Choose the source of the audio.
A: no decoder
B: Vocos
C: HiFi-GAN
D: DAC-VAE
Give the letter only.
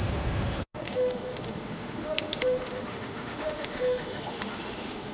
D